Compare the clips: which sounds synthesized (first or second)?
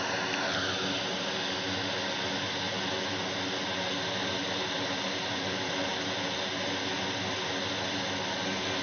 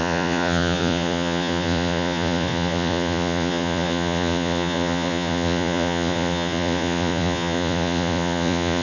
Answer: second